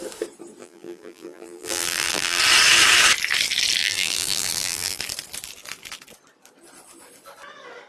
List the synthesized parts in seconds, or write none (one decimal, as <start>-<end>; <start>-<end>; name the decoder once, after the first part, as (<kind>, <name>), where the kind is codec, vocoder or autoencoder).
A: 0.6-2.4 (vocoder, BigVGAN v2); 3.8-5.0